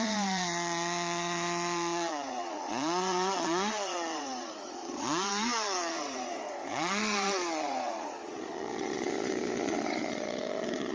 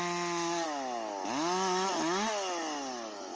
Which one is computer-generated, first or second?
first